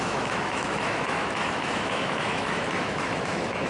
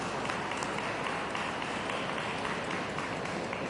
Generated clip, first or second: first